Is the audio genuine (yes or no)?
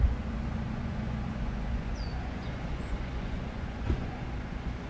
no